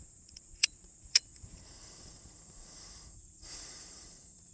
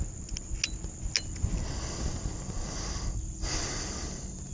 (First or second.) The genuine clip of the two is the second